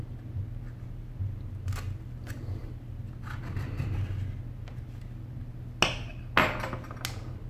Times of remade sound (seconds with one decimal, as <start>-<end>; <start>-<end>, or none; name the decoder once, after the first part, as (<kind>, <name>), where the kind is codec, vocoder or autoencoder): none